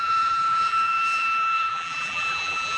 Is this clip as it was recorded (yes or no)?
no